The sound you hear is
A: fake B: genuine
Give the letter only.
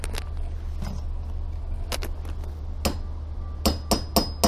B